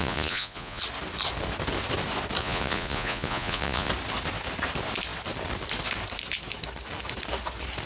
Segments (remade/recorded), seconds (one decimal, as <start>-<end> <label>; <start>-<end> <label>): 0.0-0.8 remade; 0.8-2.4 recorded; 2.4-3.9 remade; 3.9-7.9 recorded